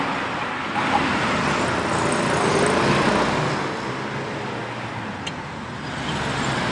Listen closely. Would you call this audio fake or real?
real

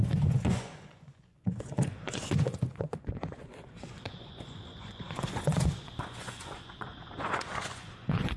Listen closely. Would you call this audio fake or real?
fake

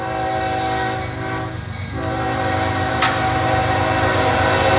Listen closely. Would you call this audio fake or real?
real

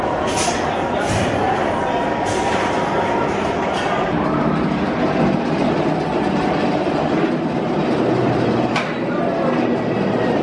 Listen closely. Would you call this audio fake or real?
real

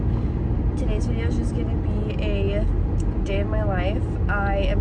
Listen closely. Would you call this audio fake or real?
real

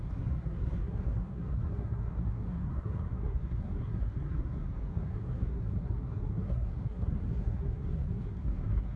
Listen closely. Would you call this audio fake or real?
fake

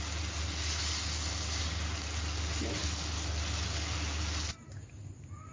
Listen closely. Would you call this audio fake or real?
real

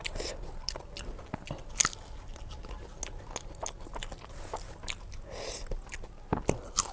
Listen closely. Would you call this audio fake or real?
real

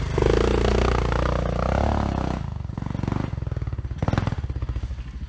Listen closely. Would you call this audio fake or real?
real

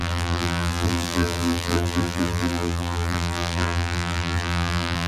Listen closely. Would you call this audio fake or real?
fake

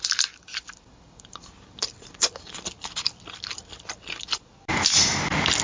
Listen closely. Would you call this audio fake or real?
real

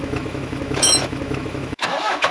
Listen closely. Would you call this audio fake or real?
fake